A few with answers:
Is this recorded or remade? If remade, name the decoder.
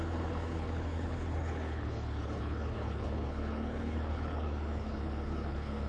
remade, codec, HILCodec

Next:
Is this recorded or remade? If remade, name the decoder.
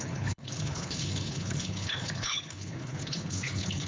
remade, codec, HILCodec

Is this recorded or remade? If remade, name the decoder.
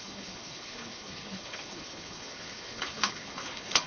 remade, codec, HILCodec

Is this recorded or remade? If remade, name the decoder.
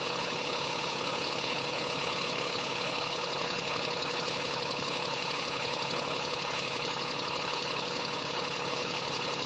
remade, codec, HILCodec